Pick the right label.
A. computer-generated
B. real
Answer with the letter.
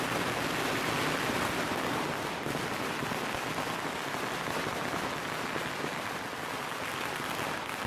B